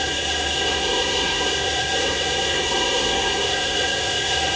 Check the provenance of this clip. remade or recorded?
remade